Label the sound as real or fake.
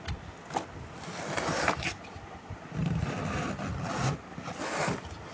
real